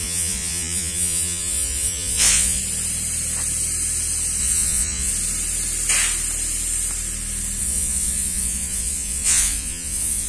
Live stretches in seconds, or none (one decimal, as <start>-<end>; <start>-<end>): 2.6-4.4; 5.1-7.6